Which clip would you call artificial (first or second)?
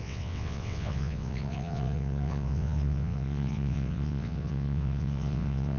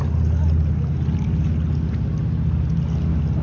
first